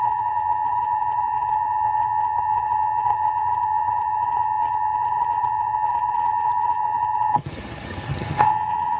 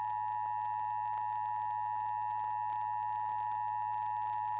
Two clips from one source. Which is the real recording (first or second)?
second